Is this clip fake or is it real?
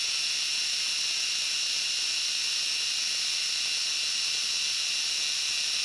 real